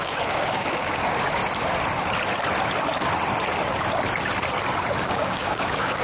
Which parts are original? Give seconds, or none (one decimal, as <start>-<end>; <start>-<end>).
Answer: 1.4-5.0